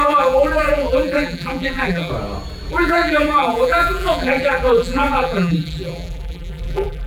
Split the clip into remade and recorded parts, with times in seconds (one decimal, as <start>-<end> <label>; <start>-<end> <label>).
0.0-2.1 remade; 2.1-2.7 recorded; 2.7-7.1 remade